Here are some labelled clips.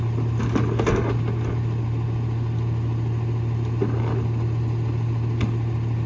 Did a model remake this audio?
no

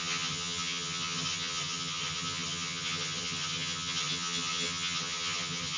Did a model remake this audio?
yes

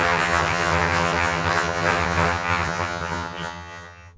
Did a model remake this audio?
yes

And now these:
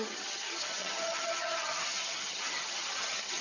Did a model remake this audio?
yes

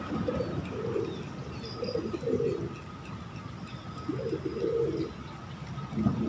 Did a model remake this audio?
no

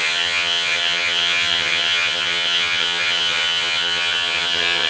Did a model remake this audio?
yes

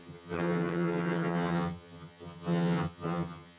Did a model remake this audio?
yes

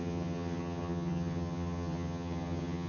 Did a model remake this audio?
yes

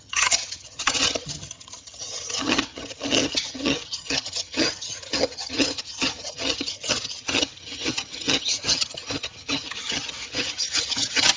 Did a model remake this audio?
yes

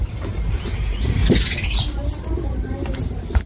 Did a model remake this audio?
no